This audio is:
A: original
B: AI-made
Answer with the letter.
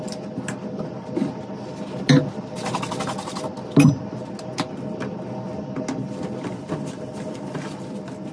A